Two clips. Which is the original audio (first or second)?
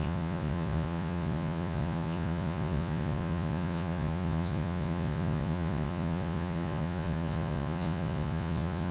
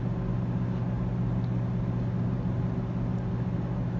second